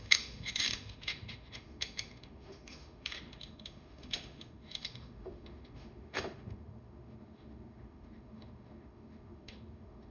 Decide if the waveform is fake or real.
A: fake